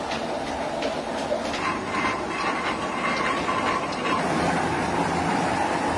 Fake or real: real